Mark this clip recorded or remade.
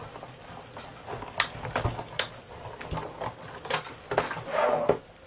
recorded